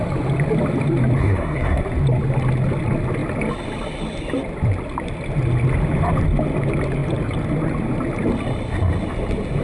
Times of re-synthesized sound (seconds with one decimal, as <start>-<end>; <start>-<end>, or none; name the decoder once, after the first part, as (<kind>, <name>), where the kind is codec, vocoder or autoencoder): 1.2-1.8 (codec, SNAC)